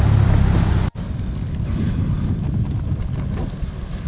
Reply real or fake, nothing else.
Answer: real